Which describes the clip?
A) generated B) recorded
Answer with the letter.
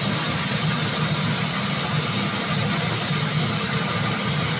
B